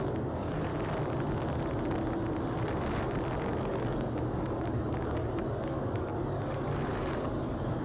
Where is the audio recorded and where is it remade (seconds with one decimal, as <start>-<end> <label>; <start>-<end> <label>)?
0.0-0.7 remade; 0.7-3.4 recorded; 3.4-7.8 remade